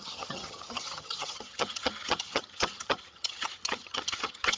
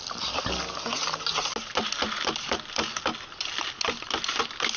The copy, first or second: first